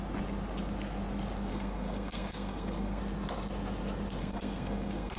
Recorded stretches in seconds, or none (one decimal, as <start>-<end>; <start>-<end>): 0.0-1.5; 3.0-4.2

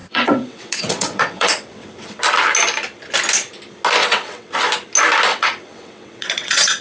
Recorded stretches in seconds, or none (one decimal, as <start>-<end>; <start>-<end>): 2.2-4.0; 4.5-5.3

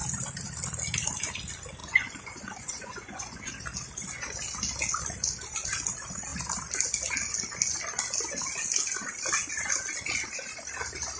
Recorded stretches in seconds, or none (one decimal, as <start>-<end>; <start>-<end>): 0.0-1.8; 3.5-11.2